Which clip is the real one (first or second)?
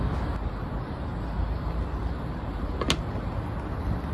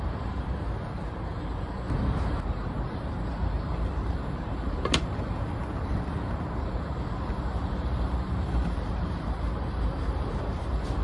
first